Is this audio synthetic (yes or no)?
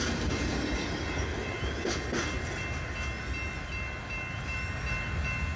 no